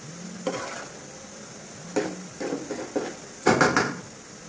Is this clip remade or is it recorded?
recorded